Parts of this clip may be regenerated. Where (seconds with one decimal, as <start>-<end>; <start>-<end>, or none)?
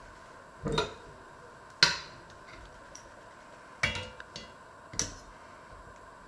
none